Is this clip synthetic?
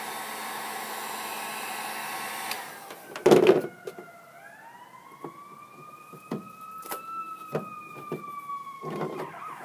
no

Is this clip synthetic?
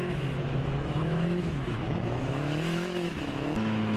yes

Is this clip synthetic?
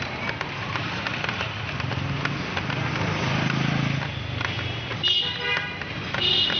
no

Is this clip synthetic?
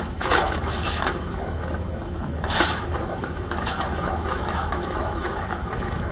yes